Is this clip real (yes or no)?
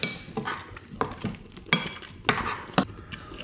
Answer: yes